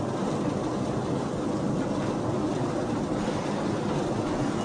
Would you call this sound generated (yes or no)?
yes